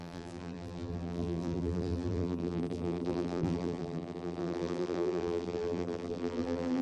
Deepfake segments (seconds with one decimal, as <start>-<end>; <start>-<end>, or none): 0.0-6.8